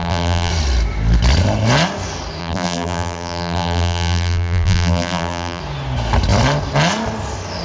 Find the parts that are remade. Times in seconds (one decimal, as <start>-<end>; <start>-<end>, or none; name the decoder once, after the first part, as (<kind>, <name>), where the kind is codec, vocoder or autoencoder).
0.0-0.5 (vocoder, BigVGAN v2); 2.4-5.6